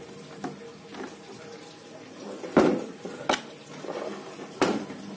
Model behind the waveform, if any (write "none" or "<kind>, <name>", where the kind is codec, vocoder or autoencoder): none